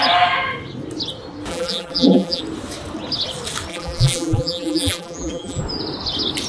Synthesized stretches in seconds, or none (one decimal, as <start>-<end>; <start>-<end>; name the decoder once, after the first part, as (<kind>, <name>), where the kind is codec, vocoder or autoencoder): 1.5-2.4 (vocoder, BigVGAN v2); 3.7-5.6